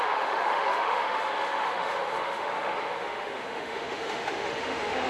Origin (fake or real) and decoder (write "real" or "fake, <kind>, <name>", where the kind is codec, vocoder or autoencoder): fake, autoencoder, DAC-VAE